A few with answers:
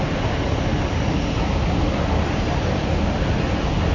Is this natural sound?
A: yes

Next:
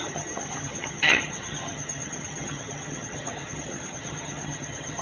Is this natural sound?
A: no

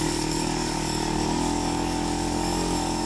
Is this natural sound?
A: no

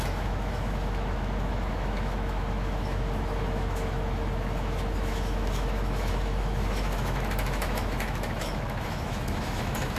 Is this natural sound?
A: no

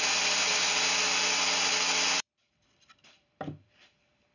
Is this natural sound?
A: no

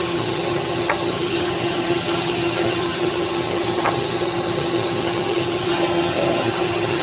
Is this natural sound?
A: no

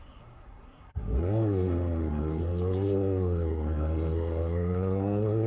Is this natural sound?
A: no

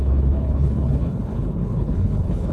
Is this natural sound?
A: no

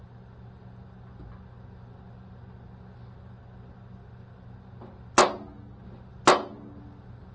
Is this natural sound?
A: yes